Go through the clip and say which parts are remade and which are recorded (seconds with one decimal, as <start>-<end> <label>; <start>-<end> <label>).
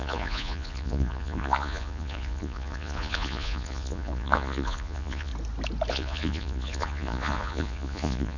0.0-5.3 remade; 5.3-5.9 recorded; 5.9-8.4 remade